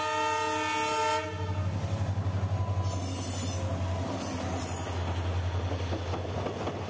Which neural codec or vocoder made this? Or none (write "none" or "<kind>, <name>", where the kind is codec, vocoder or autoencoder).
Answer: none